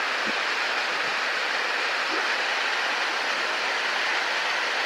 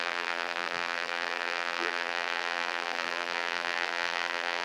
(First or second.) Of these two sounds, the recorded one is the first